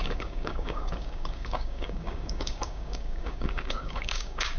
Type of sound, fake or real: fake